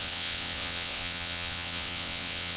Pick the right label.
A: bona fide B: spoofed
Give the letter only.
B